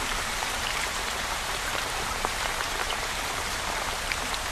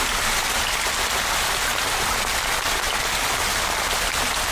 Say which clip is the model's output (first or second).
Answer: first